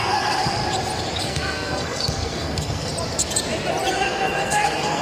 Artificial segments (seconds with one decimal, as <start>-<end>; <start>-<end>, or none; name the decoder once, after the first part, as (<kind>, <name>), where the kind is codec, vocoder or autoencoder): 0.0-0.6 (codec, SNAC); 1.2-2.9; 3.9-5.0